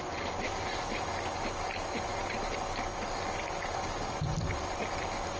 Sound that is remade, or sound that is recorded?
recorded